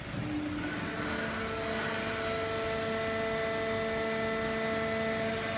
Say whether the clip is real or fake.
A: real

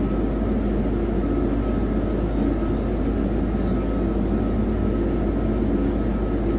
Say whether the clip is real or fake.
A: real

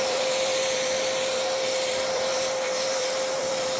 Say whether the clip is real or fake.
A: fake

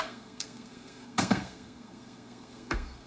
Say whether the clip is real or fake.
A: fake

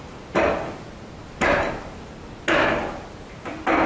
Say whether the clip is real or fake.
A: real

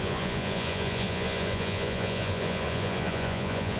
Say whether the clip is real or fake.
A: fake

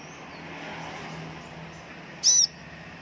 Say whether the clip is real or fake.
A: real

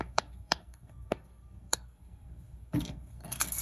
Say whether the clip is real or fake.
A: fake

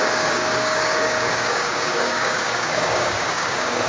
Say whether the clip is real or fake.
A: fake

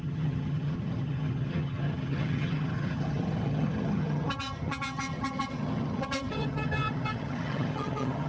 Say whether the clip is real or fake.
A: fake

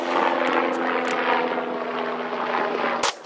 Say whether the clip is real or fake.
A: real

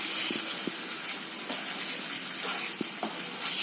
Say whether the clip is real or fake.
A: real